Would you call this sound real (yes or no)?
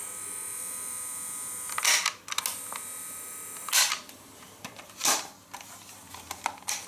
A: yes